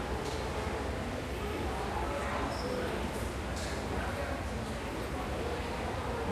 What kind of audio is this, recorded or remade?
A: recorded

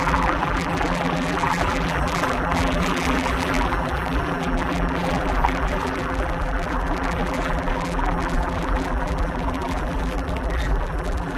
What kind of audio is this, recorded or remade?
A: remade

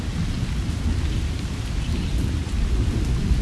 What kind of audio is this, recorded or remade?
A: recorded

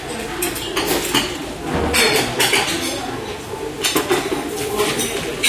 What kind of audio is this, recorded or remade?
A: recorded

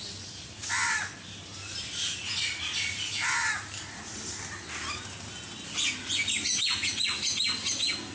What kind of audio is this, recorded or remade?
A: recorded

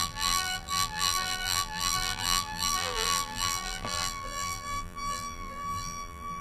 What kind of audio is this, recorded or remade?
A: remade